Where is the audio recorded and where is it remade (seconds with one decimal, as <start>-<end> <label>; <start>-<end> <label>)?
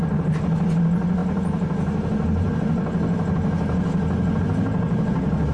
0.0-5.5 recorded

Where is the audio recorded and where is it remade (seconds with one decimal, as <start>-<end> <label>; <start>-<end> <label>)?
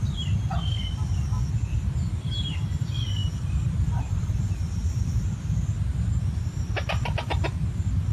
0.0-8.1 recorded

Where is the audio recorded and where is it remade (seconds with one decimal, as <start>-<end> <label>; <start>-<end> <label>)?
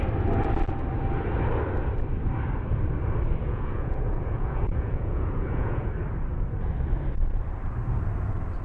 0.0-3.4 recorded; 3.4-5.9 remade; 5.9-8.6 recorded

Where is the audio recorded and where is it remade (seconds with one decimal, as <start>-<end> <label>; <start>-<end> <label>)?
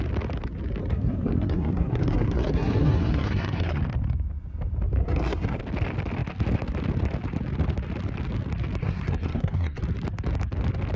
0.0-0.9 recorded; 0.9-3.8 remade; 3.8-5.0 recorded; 5.0-5.6 remade; 5.6-8.8 recorded; 8.8-9.8 remade; 9.8-11.0 recorded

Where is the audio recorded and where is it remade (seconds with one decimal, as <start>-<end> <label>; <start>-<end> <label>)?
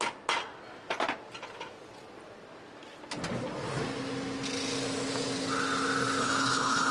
0.0-6.2 recorded; 6.2-6.9 remade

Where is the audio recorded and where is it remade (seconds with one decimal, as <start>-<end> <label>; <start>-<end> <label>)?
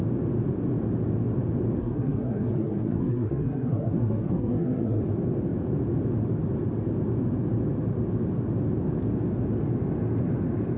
0.0-1.8 recorded; 1.8-5.0 remade; 5.0-10.8 recorded